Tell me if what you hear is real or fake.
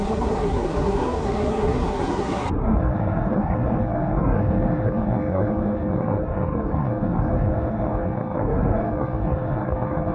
fake